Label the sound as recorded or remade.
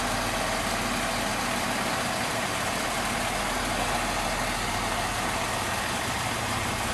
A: recorded